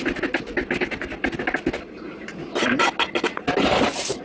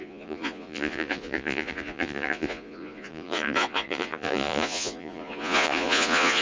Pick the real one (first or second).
first